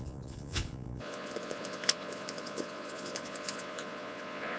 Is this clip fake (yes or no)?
yes